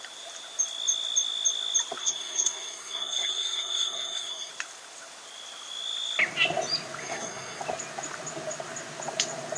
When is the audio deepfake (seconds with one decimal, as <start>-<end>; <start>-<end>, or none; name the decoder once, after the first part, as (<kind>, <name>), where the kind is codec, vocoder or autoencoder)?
2.0-4.5 (codec, SNAC); 7.0-7.6